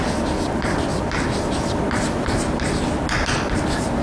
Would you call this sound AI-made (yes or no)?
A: no